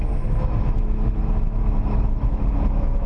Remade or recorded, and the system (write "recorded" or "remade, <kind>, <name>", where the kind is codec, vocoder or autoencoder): remade, autoencoder, DAC-VAE